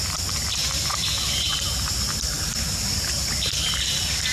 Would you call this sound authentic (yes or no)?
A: yes